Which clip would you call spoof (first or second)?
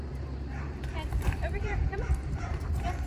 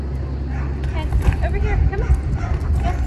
first